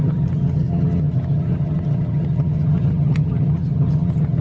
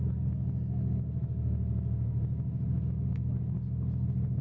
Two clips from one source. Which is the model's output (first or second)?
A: first